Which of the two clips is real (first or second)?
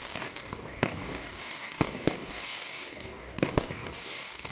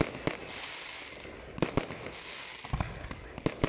second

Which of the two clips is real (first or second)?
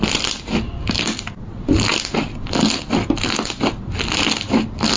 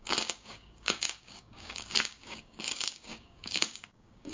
first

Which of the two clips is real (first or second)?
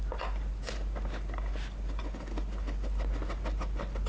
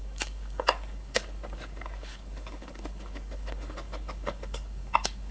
first